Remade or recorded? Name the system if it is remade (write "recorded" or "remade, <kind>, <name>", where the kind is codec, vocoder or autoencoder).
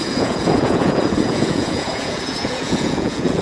remade, vocoder, Vocos